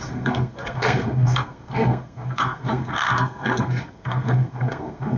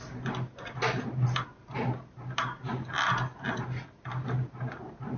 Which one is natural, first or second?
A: second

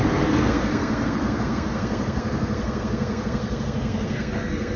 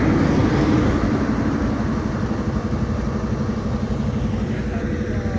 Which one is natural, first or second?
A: second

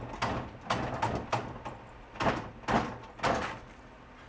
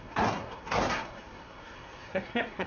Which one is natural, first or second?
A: first